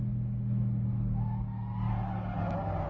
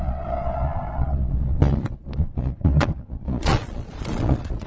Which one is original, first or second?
first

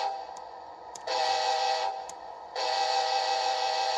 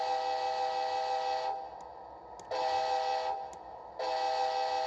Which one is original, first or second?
second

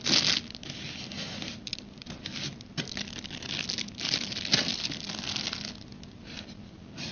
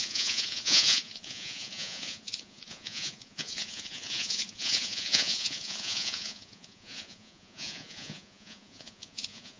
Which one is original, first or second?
first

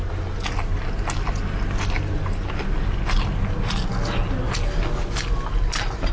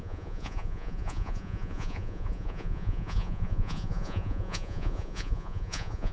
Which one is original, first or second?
first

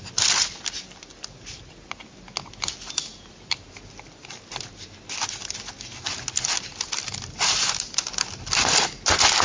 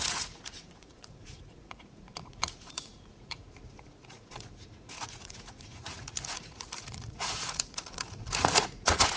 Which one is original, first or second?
first